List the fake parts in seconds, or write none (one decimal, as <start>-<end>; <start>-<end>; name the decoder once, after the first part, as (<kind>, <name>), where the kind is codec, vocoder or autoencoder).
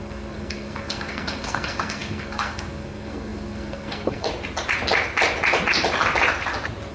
0.0-4.3 (codec, SNAC)